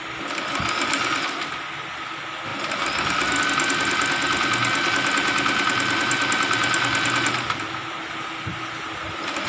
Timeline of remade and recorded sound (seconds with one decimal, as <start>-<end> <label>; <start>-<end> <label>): 0.0-9.5 recorded